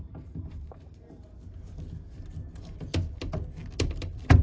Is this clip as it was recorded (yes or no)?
yes